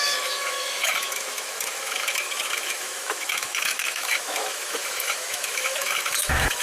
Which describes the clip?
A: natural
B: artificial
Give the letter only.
B